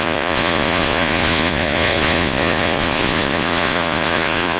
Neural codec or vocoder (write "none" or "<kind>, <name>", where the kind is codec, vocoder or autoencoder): vocoder, Vocos